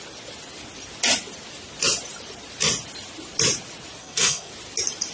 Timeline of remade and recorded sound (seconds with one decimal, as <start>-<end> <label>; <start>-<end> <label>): 0.0-4.0 recorded; 4.0-4.5 remade; 4.5-5.1 recorded